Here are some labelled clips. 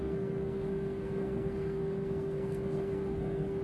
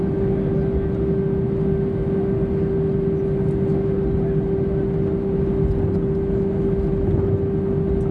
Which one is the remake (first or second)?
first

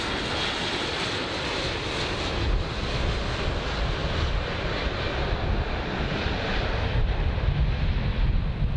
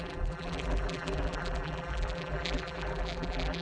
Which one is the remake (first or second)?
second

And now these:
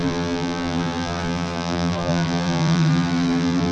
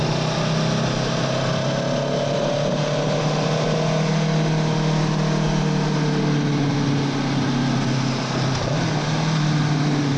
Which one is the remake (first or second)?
first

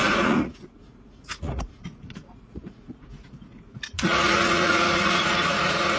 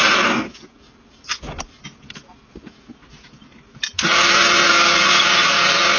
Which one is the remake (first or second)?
first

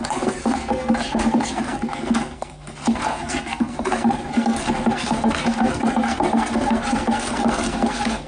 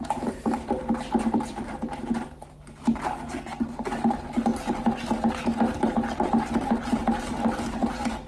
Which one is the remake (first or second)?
first